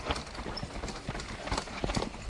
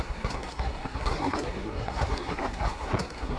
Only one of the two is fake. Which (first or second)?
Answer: second